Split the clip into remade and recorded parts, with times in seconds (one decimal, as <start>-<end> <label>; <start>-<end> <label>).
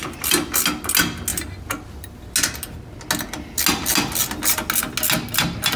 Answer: 0.0-5.8 recorded